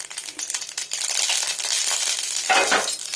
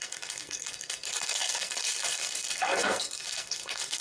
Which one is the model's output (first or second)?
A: second